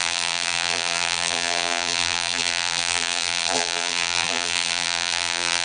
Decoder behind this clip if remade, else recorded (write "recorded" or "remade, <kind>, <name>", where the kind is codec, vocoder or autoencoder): remade, vocoder, BigVGAN v2